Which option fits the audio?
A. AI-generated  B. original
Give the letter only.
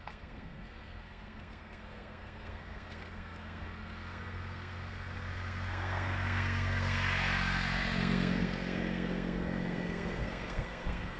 A